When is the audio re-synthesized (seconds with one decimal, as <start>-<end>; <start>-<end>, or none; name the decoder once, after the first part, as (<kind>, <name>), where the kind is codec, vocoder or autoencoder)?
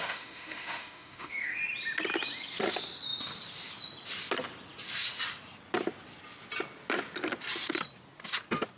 0.0-1.6 (autoencoder, DAC-VAE)